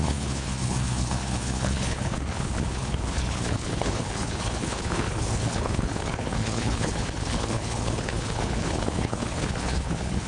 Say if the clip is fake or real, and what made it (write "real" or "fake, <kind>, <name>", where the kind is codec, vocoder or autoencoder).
fake, codec, HILCodec